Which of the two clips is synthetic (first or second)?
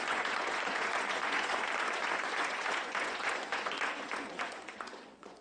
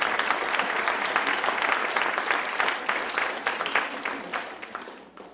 first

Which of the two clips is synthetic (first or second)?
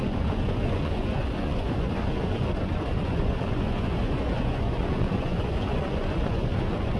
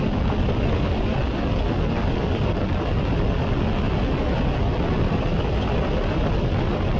first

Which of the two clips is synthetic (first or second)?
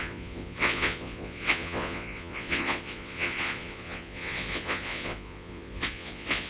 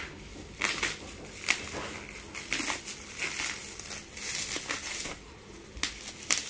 first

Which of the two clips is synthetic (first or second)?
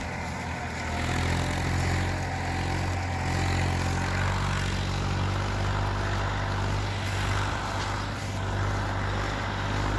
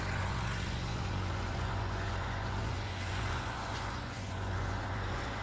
second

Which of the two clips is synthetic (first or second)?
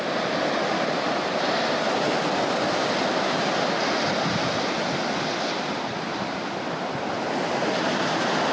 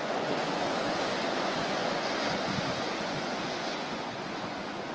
second